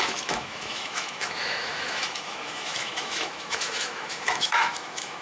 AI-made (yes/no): yes